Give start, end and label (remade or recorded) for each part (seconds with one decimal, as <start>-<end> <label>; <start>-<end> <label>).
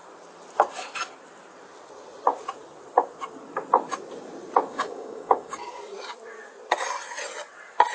0.0-4.7 recorded; 4.7-5.8 remade; 5.8-7.9 recorded